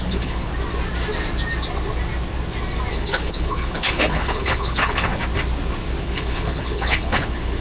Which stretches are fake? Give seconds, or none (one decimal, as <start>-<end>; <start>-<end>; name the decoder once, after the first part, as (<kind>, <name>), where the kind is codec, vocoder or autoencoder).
0.0-0.5 (codec, HILCodec); 2.9-5.1; 6.0-7.6